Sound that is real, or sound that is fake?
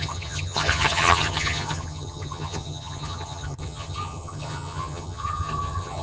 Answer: fake